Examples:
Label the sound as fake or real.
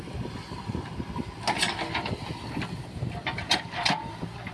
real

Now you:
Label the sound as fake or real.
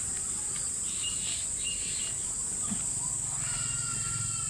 real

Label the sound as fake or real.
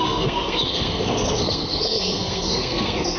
fake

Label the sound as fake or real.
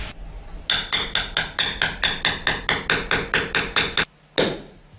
real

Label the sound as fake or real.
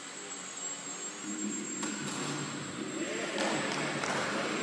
real